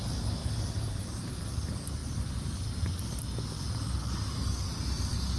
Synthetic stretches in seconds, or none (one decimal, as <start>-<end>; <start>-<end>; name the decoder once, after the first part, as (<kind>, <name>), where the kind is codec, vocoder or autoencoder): 0.4-1.2 (vocoder, BigVGAN v2)

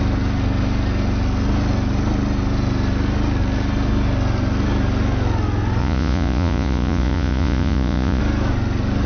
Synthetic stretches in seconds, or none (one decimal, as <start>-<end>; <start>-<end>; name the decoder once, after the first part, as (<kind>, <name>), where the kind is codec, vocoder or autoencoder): 5.8-8.2 (vocoder, Vocos)

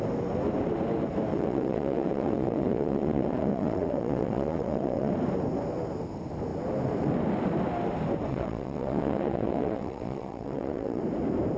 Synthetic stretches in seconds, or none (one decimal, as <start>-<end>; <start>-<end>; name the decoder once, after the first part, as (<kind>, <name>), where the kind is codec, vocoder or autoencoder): 1.3-5.1 (vocoder, WaveNeXt); 8.3-11.0

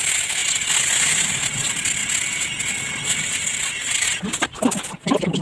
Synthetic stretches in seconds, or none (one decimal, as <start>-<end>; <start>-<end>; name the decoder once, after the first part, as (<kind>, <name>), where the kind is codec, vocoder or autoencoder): none

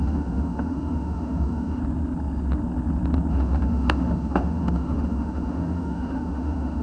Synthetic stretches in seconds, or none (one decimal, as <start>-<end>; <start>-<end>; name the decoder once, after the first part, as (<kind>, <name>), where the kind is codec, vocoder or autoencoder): 0.0-1.8 (autoencoder, DAC-VAE); 3.3-6.8

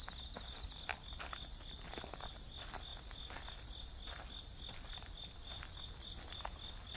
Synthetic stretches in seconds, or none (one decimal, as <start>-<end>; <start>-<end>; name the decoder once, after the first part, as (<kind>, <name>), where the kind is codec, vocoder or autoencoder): none

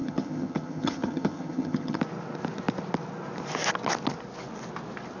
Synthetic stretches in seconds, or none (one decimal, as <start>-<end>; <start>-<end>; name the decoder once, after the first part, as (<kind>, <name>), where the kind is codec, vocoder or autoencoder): 0.0-2.0 (vocoder, HiFi-GAN)